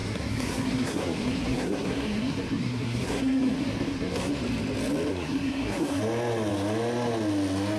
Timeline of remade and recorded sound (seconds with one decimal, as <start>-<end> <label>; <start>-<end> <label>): 0.0-4.3 remade; 4.3-5.1 recorded; 5.1-6.0 remade; 6.0-7.8 recorded